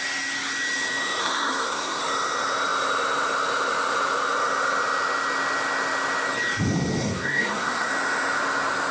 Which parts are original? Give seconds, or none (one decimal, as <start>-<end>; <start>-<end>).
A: 0.0-1.2; 2.0-7.0; 7.9-8.9